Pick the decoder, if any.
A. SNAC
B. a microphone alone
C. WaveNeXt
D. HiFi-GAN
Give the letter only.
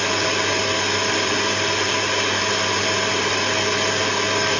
B